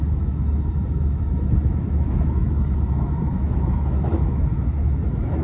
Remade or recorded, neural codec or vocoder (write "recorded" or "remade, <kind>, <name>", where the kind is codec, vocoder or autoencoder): remade, autoencoder, DAC-VAE